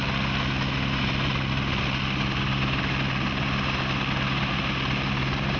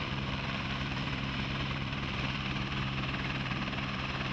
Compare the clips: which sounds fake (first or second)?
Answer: second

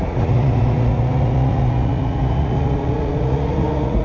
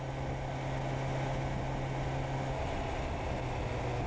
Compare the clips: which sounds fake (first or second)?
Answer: first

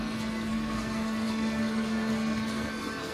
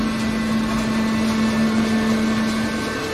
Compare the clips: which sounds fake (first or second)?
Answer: first